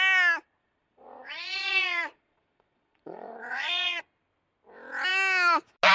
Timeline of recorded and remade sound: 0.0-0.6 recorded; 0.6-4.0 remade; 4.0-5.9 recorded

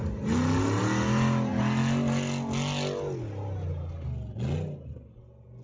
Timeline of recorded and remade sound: 0.0-5.6 recorded

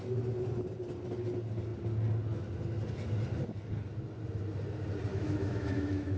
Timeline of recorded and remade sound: 0.0-5.1 recorded; 5.1-6.2 remade

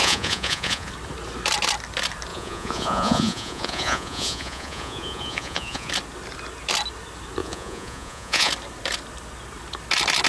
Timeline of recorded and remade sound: 0.0-0.9 remade; 0.9-2.3 recorded; 2.3-5.9 remade; 5.9-7.4 recorded; 7.4-8.5 remade; 8.5-10.3 recorded

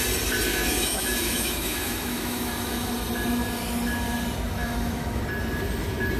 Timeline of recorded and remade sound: 0.0-0.5 recorded; 0.5-2.9 remade; 2.9-4.6 recorded; 4.6-5.2 remade; 5.2-6.2 recorded

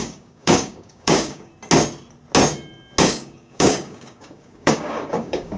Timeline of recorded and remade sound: 0.0-1.5 remade; 1.5-3.0 recorded; 3.0-5.6 remade

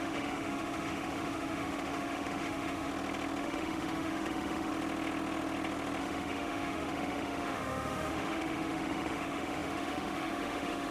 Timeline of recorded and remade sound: 0.0-2.9 remade; 2.9-3.4 recorded; 3.4-4.7 remade; 4.7-6.0 recorded; 6.0-10.9 remade

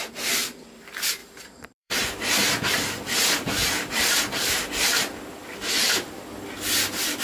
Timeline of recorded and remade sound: 0.0-1.2 recorded; 1.2-2.1 remade; 2.1-3.6 recorded; 3.6-4.6 remade; 4.6-5.4 recorded; 5.4-6.1 remade; 6.1-7.2 recorded